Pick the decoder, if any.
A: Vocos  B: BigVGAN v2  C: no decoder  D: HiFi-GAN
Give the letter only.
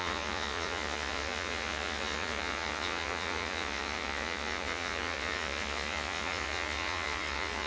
A